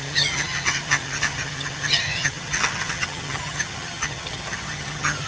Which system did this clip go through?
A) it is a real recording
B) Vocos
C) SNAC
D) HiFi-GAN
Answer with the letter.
D